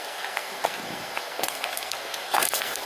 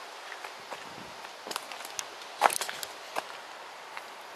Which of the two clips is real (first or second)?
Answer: second